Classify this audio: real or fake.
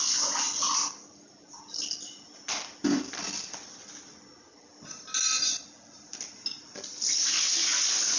real